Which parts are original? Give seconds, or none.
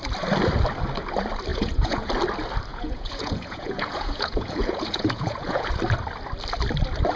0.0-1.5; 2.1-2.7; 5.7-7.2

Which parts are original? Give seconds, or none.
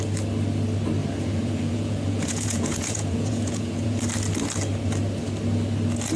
0.0-1.0; 4.0-6.2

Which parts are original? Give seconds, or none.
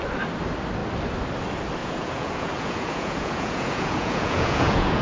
0.0-1.8